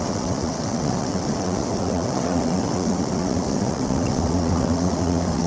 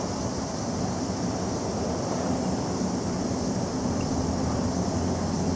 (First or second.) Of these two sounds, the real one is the second